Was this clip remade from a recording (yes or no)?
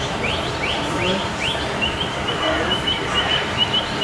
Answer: yes